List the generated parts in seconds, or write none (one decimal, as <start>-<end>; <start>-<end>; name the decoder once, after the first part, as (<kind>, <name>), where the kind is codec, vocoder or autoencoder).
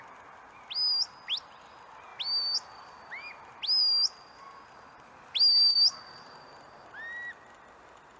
none